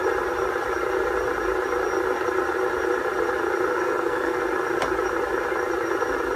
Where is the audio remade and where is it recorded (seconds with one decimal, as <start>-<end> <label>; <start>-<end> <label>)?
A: 0.0-3.7 recorded; 3.7-4.4 remade; 4.4-6.4 recorded